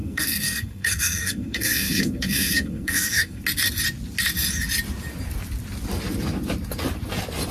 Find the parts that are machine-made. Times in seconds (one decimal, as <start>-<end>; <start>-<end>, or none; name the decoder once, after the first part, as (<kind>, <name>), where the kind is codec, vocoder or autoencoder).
0.0-3.4 (codec, SNAC)